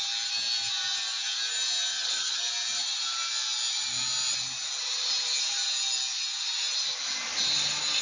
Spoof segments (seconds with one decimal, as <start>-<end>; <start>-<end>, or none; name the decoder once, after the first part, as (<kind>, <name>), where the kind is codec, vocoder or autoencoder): 1.9-2.4 (vocoder, HiFi-GAN)